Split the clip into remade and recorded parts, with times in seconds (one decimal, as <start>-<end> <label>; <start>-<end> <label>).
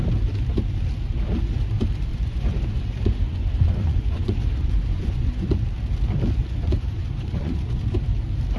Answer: 0.0-2.1 recorded; 2.1-5.6 remade; 5.6-6.4 recorded; 6.4-7.8 remade; 7.8-8.6 recorded